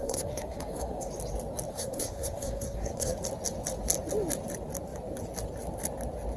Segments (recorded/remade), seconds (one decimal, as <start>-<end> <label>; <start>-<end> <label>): 0.0-1.1 remade; 1.1-1.7 recorded; 1.7-3.2 remade; 3.2-6.4 recorded